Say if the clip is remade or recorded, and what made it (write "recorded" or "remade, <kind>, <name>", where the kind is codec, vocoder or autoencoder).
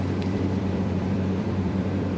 remade, vocoder, BigVGAN v2